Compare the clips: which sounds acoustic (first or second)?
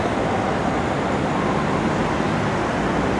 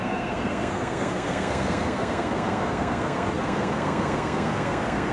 first